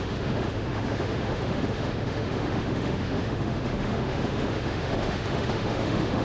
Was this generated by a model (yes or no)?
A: yes